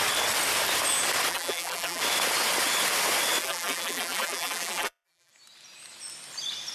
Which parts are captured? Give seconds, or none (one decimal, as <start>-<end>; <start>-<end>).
0.0-1.3; 2.0-3.4; 5.3-6.7